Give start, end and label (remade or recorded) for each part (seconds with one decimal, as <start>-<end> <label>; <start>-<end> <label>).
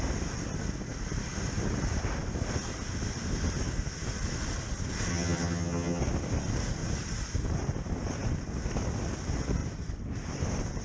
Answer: 0.0-5.1 recorded; 5.1-6.0 remade; 6.0-10.8 recorded